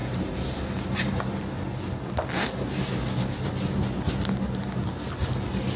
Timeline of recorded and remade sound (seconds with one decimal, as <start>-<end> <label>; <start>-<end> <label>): 0.0-5.8 recorded